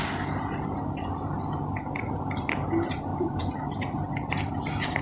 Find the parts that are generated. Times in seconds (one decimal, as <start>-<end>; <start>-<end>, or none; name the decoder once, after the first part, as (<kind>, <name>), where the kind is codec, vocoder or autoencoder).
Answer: 3.1-4.3 (vocoder, BigVGAN v2)